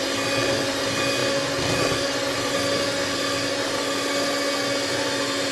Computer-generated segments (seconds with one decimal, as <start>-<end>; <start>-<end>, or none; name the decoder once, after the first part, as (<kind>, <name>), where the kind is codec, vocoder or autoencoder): none